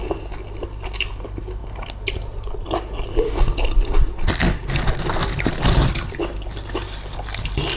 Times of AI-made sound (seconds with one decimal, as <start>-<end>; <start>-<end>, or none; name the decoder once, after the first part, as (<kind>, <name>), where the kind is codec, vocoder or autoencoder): none